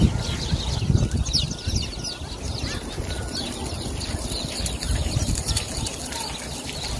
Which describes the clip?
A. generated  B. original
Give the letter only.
B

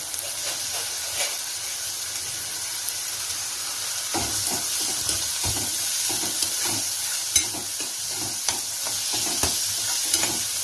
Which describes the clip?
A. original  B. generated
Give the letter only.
A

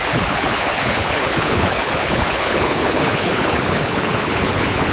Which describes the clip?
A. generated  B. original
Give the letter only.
A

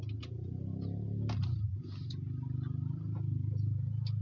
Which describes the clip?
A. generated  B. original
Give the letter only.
B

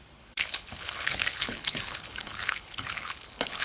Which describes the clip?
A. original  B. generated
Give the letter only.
B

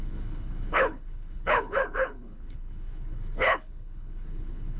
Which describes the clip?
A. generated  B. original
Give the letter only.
A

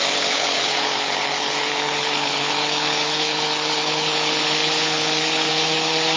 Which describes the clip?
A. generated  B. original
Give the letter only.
A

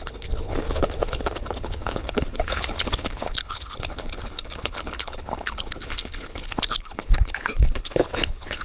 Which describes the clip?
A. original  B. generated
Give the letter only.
B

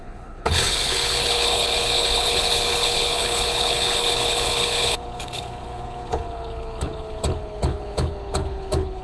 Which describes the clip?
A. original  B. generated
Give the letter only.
B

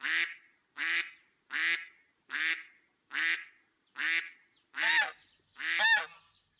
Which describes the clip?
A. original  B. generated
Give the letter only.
A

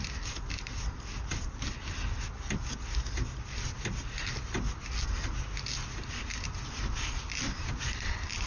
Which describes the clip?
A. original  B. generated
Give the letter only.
A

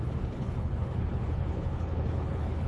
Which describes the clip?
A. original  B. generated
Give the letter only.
B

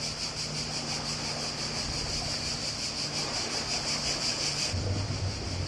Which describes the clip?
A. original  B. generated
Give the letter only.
A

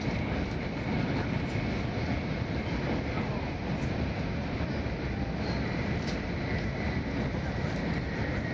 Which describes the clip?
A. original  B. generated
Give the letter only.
A